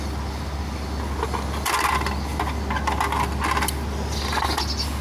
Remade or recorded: recorded